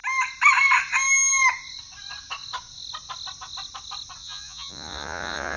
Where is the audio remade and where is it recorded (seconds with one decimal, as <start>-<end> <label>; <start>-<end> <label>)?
0.0-4.2 recorded; 4.2-5.6 remade